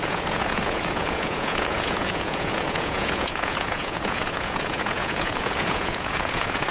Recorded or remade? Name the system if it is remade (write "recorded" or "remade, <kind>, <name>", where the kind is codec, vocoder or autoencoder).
remade, vocoder, Vocos